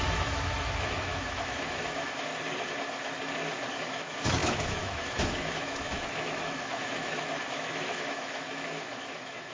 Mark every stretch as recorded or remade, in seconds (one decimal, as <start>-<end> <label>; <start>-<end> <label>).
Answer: 0.0-2.3 remade; 2.3-3.8 recorded; 3.8-9.5 remade